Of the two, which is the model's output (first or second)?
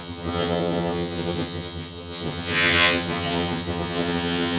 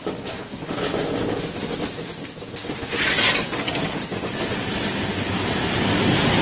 first